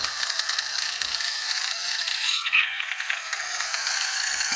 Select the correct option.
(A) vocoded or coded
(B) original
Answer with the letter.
A